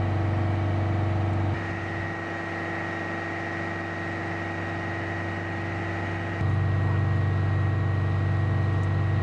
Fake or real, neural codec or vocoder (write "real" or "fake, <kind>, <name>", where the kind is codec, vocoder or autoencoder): real